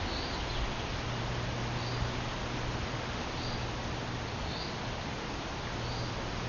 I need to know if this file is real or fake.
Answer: real